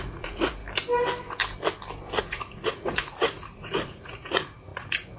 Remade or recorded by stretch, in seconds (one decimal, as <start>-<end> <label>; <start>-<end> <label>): 0.0-0.6 remade; 0.6-2.2 recorded; 2.2-5.2 remade